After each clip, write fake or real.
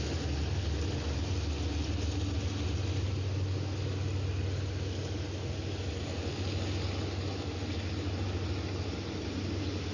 real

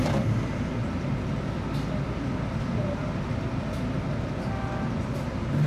real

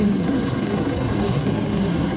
fake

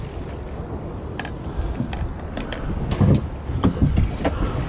real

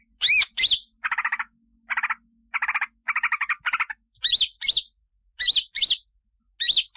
real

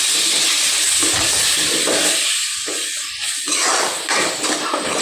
real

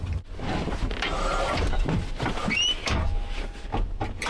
real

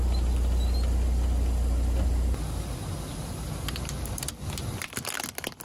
real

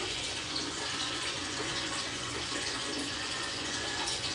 fake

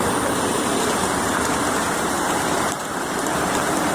fake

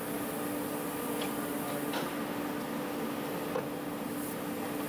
real